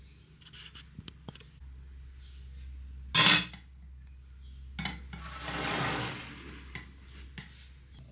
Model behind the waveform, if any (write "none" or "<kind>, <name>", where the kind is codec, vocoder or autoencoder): none